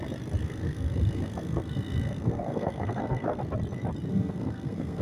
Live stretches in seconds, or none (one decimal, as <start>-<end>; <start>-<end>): 0.0-0.4; 3.4-4.1